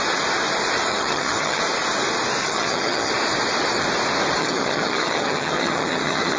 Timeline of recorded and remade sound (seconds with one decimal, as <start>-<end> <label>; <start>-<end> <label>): 0.0-0.9 recorded; 0.9-1.6 remade; 1.6-2.4 recorded; 2.4-3.1 remade; 3.1-4.4 recorded; 4.4-6.4 remade